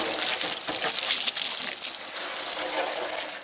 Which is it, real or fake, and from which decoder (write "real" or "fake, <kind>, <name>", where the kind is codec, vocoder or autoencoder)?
real